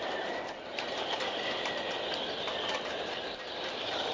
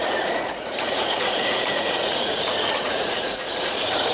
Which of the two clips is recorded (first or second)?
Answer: first